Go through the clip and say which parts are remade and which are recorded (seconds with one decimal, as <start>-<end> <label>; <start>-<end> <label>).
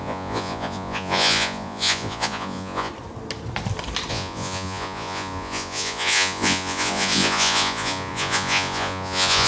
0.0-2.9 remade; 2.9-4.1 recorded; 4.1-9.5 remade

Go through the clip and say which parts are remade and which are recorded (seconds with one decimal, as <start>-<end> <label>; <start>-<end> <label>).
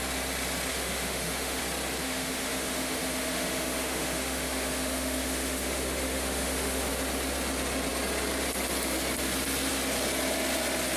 0.0-0.7 recorded; 0.7-1.6 remade; 1.6-2.0 recorded; 2.0-6.9 remade; 6.9-11.0 recorded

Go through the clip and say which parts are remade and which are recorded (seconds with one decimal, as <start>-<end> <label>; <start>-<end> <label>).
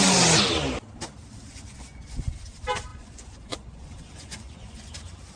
0.0-1.3 recorded; 1.3-2.3 remade; 2.3-2.9 recorded; 2.9-5.0 remade; 5.0-5.4 recorded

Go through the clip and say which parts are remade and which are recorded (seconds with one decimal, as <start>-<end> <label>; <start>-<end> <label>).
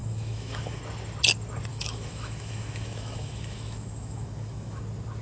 0.0-0.8 remade; 0.8-1.7 recorded; 1.7-4.8 remade; 4.8-5.2 recorded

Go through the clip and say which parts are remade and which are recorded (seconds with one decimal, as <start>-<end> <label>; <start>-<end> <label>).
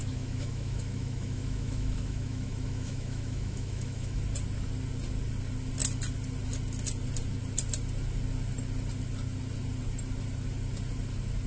0.0-4.2 remade; 4.2-11.5 recorded